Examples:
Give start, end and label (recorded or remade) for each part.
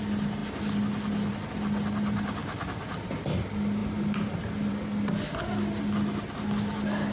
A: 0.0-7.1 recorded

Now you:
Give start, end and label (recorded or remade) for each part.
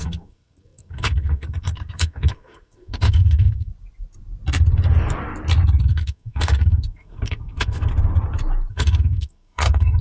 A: 0.0-3.7 remade; 3.7-5.8 recorded; 5.8-7.9 remade; 7.9-8.7 recorded; 8.7-10.0 remade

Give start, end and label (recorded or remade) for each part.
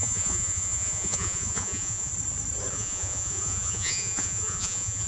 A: 0.0-2.1 remade; 2.1-2.7 recorded; 2.7-5.1 remade